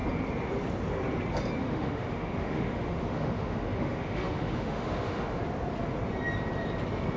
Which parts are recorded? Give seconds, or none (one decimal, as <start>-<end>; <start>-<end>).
0.0-1.6; 5.4-7.2